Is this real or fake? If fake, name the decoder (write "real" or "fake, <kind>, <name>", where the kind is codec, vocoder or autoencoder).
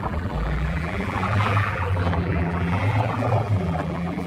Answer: fake, vocoder, BigVGAN v2